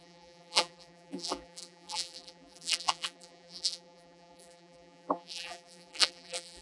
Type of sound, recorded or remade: remade